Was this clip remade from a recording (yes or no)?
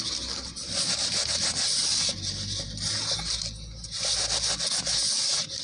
no